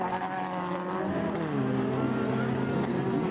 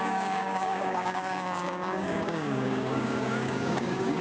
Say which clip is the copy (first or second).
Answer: second